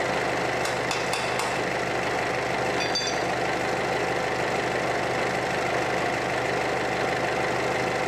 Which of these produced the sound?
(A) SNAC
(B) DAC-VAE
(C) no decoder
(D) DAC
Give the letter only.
C